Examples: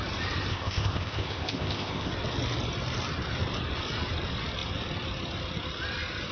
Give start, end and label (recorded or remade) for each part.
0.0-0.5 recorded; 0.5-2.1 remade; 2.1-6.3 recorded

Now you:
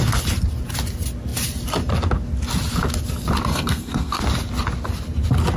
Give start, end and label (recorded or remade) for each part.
0.0-3.5 recorded; 3.5-4.2 remade; 4.2-5.6 recorded

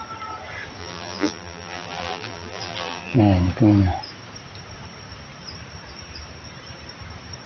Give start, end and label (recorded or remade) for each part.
0.0-0.8 recorded; 0.8-3.2 remade; 3.2-7.5 recorded

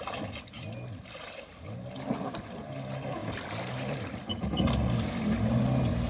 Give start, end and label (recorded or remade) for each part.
0.0-6.1 recorded

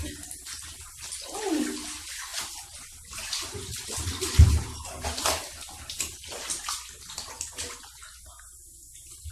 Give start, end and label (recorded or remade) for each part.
0.0-9.3 recorded